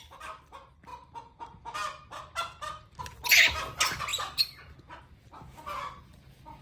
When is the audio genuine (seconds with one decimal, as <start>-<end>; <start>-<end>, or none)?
0.0-6.6